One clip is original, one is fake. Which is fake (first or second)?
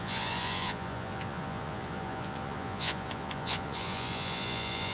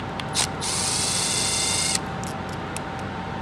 first